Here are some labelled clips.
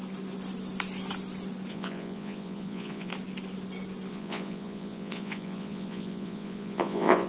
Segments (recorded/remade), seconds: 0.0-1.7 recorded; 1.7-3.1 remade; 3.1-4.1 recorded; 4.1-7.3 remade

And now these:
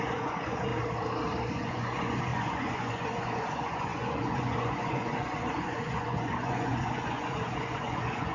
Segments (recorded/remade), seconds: 0.0-0.7 remade; 0.7-1.5 recorded; 1.5-8.3 remade

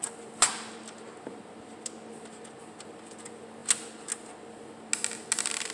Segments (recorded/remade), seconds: 0.0-5.7 recorded

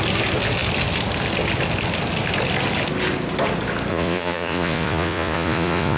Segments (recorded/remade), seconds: 0.0-3.9 recorded; 3.9-6.0 remade

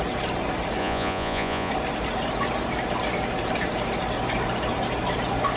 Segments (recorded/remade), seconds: 0.0-0.8 recorded; 0.8-1.7 remade; 1.7-5.6 recorded

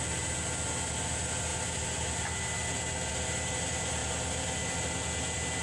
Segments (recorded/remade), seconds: 0.0-5.6 recorded